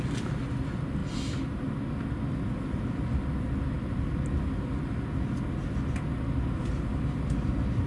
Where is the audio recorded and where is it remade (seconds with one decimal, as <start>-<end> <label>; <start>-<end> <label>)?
0.0-7.9 recorded